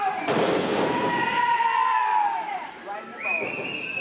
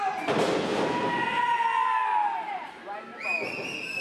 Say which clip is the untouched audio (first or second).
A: second